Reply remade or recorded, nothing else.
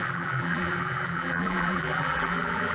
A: remade